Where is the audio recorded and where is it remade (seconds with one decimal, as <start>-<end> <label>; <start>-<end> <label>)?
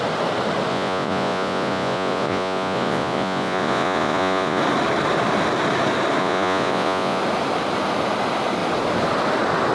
0.0-0.7 recorded; 0.7-4.6 remade; 4.6-6.2 recorded; 6.2-7.2 remade; 7.2-9.7 recorded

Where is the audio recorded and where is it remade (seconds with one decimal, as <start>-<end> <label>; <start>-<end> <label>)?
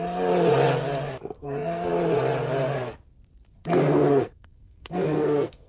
0.0-1.4 recorded; 1.4-1.9 remade; 1.9-3.6 recorded; 3.6-5.7 remade